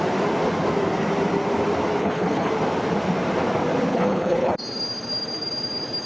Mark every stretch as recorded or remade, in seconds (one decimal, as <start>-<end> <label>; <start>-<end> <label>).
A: 0.0-2.0 recorded; 2.0-2.5 remade; 2.5-3.9 recorded; 3.9-4.6 remade; 4.6-6.1 recorded